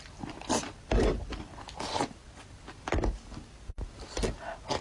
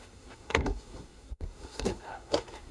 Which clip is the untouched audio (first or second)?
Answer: first